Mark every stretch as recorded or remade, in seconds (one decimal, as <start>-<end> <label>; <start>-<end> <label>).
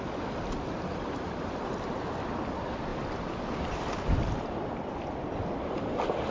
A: 0.0-2.9 remade; 2.9-3.8 recorded; 3.8-6.3 remade